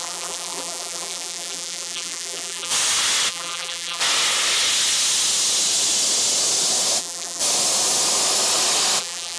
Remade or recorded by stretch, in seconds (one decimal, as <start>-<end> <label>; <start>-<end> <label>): 0.0-2.7 remade; 2.7-3.3 recorded; 3.3-4.0 remade; 4.0-7.0 recorded; 7.0-7.4 remade; 7.4-9.0 recorded; 9.0-9.4 remade